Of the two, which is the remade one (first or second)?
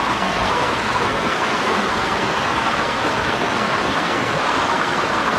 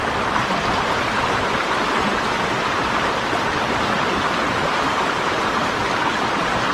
first